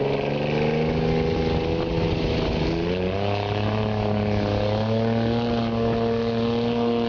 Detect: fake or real real